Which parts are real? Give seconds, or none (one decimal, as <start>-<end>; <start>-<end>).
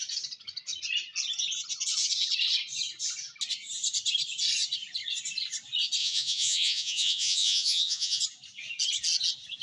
0.0-6.0; 8.2-9.6